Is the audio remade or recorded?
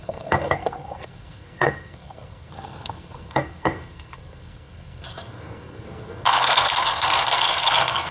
remade